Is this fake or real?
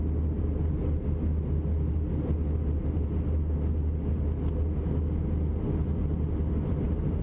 real